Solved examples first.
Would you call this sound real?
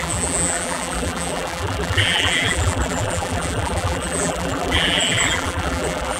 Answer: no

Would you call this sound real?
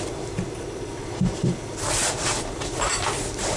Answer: no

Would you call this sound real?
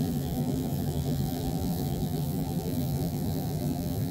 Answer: no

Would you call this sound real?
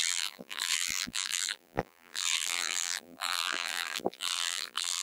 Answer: no